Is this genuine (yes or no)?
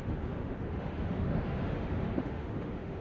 no